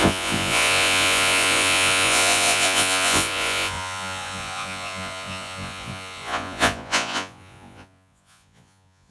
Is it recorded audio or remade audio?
remade